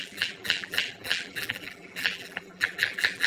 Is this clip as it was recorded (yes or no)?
no